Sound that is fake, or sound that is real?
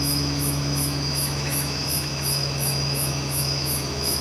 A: fake